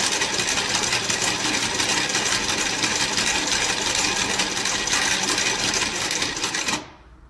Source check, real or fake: real